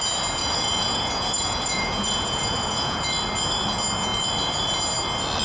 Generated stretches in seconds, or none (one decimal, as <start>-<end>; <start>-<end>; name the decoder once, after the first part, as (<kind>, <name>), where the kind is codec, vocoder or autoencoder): 0.4-3.0 (vocoder, Vocos)